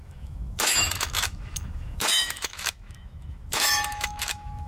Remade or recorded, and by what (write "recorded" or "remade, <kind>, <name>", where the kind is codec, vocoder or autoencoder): remade, autoencoder, DAC-VAE